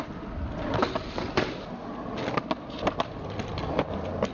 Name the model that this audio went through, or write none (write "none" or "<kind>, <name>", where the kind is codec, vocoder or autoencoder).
none